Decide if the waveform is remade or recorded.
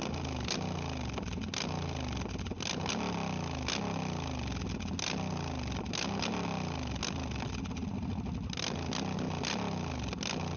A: recorded